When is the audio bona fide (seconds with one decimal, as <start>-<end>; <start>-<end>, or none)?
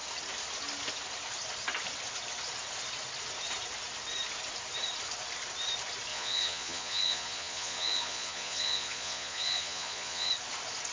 0.0-6.1; 10.3-10.9